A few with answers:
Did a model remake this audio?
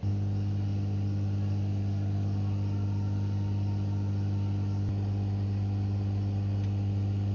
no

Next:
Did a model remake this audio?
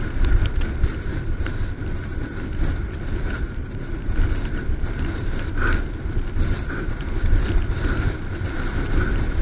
no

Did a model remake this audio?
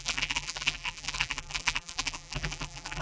yes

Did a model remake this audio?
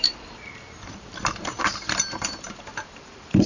yes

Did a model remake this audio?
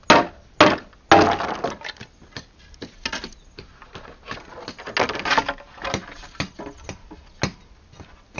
no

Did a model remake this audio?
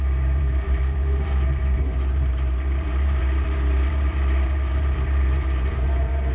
yes